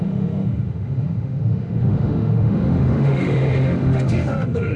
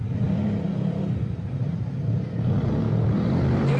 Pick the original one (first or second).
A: second